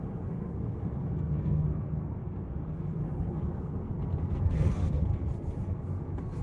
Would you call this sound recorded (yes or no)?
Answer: no